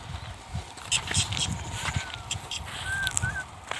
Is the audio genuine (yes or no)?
yes